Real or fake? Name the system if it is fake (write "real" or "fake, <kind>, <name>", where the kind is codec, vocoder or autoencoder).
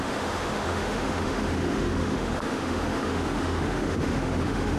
fake, autoencoder, DAC-VAE